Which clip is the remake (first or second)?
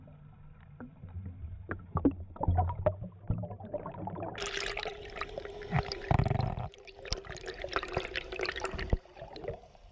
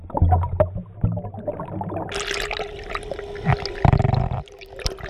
first